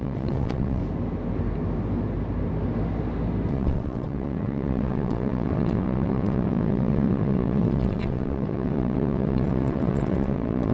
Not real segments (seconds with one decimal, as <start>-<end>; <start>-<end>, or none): 0.0-0.8; 3.5-10.7

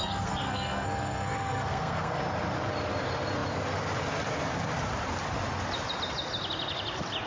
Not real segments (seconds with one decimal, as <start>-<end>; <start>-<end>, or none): 0.0-2.2

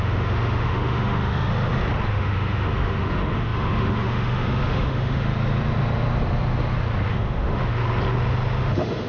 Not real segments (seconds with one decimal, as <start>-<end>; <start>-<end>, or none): 0.0-1.5; 2.1-5.3; 7.1-7.7; 8.6-9.1

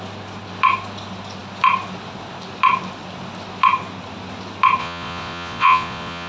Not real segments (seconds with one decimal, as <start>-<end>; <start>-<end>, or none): 4.8-6.3